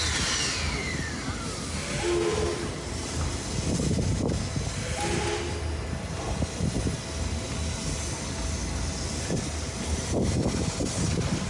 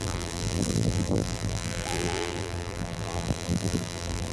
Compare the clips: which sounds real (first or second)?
first